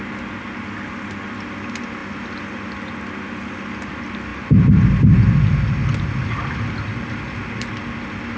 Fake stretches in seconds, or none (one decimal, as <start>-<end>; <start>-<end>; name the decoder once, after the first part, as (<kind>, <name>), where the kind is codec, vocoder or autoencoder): none